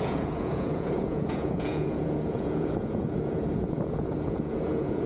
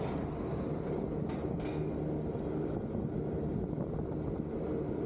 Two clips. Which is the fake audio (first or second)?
first